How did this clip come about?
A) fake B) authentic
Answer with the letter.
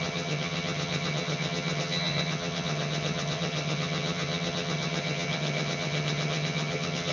A